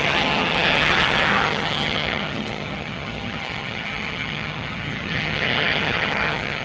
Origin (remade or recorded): remade